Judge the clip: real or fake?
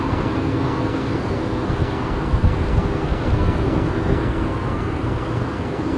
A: fake